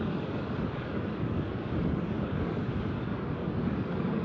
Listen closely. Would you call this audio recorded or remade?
remade